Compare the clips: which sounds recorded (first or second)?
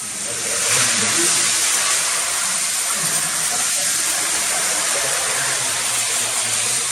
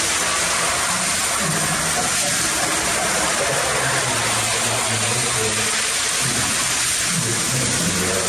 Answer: second